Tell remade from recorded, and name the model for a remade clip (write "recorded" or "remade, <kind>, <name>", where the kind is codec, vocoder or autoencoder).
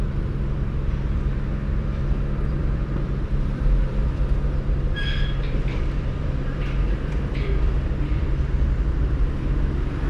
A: remade, vocoder, BigVGAN v2